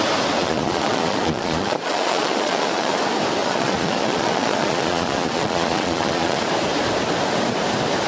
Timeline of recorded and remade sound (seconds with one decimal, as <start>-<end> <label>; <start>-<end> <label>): 0.0-0.4 recorded; 0.4-3.0 remade; 3.0-3.4 recorded; 3.4-6.4 remade; 6.4-8.1 recorded